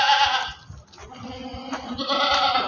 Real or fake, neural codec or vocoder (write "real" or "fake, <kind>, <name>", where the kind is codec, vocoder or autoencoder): real